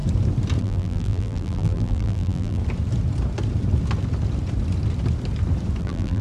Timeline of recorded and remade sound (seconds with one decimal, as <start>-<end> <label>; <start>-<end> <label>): 0.0-0.6 recorded; 0.6-2.6 remade; 2.6-5.8 recorded; 5.8-6.2 remade